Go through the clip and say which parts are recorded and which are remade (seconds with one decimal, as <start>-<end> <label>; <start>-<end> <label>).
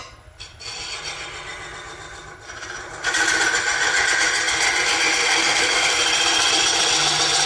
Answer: 0.0-5.2 recorded; 5.2-5.9 remade; 5.9-7.5 recorded